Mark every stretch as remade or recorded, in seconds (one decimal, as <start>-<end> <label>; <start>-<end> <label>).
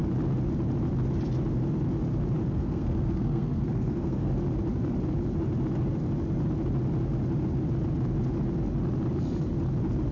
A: 0.0-2.5 recorded; 2.5-4.3 remade; 4.3-10.1 recorded